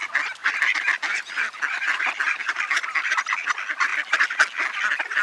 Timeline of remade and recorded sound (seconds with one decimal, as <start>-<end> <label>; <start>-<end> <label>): 0.0-0.4 recorded; 0.4-3.5 remade; 3.5-5.2 recorded